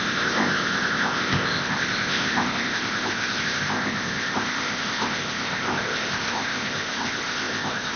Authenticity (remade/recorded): remade